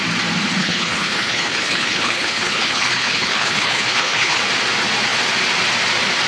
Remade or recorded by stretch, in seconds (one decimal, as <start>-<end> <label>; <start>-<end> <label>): 0.0-0.6 recorded; 0.6-4.4 remade; 4.4-6.3 recorded